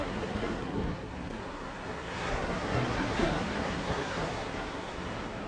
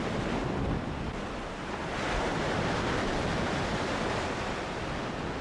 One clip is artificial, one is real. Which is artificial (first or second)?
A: first